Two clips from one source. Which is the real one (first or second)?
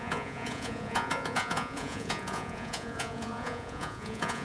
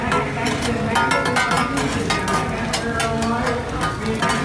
second